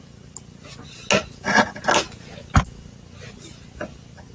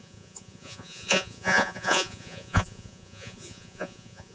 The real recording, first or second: first